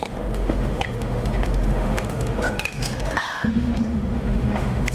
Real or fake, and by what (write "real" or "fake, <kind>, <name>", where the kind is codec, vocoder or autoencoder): fake, autoencoder, DAC-VAE